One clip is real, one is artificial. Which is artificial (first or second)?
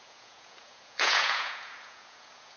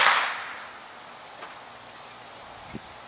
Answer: first